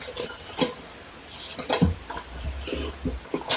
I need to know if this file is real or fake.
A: real